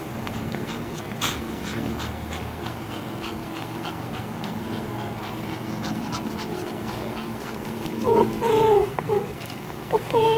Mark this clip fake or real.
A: fake